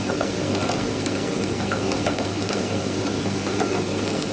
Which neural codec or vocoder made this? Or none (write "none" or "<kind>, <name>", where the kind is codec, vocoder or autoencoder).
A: codec, SNAC